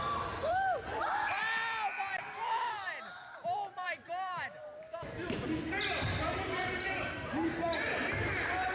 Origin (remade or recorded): remade